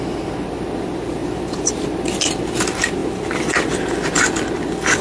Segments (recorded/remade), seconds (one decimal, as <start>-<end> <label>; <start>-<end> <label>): 0.0-1.2 recorded; 1.2-1.7 remade; 1.7-5.0 recorded